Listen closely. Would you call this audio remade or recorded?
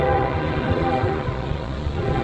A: remade